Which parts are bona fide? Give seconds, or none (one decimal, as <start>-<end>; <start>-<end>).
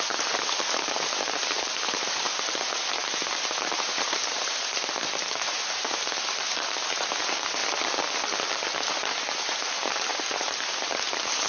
7.6-8.9